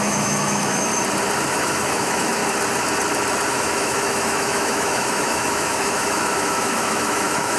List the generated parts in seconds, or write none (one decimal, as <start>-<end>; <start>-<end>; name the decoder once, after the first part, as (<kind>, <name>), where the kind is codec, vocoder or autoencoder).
0.0-0.9 (autoencoder, DAC-VAE); 1.5-2.4; 3.5-7.6